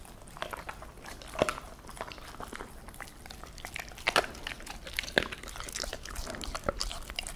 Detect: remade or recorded recorded